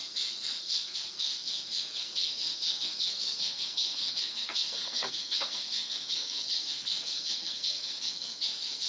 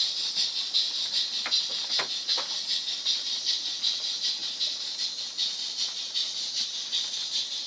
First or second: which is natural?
second